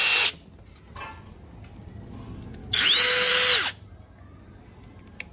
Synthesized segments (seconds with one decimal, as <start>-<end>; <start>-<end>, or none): 2.6-3.3